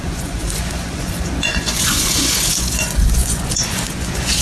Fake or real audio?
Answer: fake